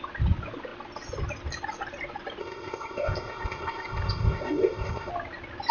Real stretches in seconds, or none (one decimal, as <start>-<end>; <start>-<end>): 0.0-2.4; 5.1-5.7